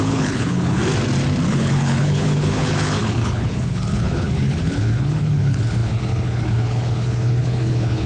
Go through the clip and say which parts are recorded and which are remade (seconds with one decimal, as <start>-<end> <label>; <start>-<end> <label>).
0.0-0.8 remade; 0.8-1.5 recorded; 1.5-8.1 remade